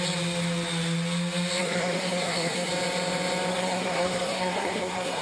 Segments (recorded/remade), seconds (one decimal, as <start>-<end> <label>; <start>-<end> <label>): 0.0-1.6 recorded; 1.6-2.7 remade; 2.7-3.5 recorded; 3.5-5.2 remade